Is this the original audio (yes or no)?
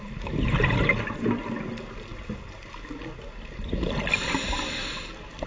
yes